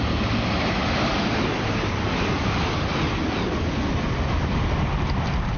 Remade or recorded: recorded